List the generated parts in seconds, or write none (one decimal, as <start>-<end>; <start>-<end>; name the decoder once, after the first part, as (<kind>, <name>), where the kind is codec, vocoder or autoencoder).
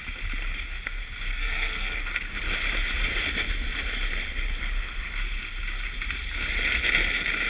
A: 1.3-2.0 (codec, SNAC)